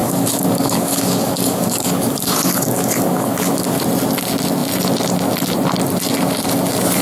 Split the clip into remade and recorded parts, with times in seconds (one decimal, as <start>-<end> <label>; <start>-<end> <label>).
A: 0.0-3.8 remade; 3.8-7.0 recorded